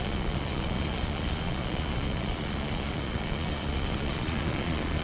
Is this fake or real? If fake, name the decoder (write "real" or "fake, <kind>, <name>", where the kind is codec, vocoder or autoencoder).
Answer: fake, vocoder, Vocos